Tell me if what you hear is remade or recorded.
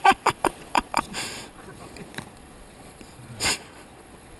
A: remade